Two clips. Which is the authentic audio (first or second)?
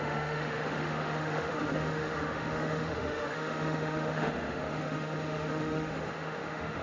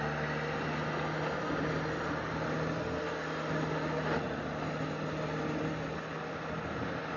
second